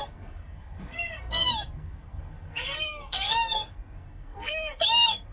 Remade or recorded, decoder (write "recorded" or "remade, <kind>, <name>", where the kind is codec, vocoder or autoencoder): remade, codec, SNAC